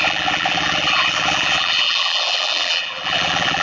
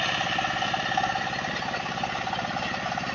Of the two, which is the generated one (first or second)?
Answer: first